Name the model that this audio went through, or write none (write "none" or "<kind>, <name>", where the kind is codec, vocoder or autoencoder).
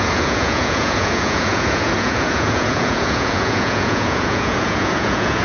vocoder, Vocos